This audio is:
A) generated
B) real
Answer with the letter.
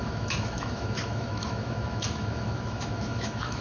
A